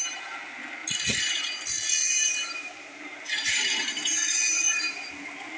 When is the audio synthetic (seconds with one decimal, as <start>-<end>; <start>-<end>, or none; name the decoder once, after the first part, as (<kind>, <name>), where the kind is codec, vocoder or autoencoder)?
2.0-5.1 (vocoder, BigVGAN v2)